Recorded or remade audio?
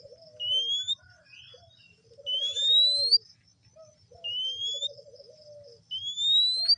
recorded